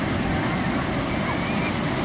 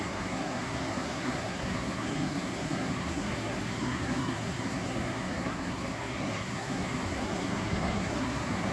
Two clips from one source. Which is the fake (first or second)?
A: second